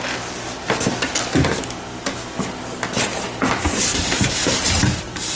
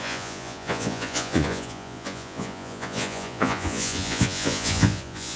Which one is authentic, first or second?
first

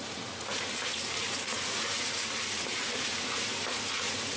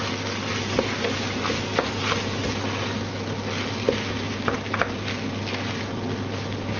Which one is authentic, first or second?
second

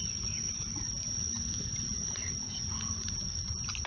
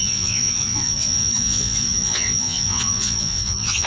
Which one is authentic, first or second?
first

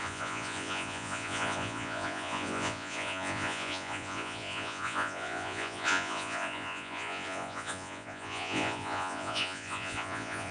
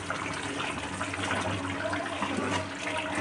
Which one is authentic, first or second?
second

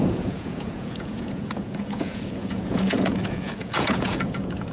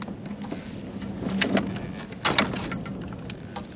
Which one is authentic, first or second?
second